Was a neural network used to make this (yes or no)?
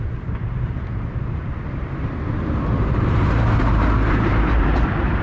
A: yes